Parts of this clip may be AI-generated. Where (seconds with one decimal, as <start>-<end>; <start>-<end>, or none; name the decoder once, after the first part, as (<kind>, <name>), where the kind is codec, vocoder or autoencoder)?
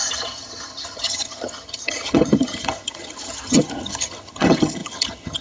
0.0-5.4 (vocoder, HiFi-GAN)